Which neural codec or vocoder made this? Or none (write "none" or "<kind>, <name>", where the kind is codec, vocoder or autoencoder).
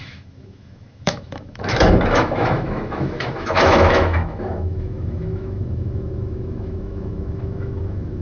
autoencoder, DAC-VAE